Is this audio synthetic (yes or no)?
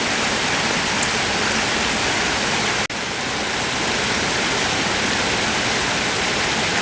no